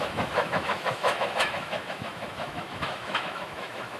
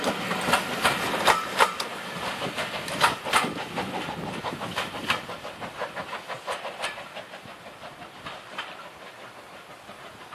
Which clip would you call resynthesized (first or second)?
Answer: first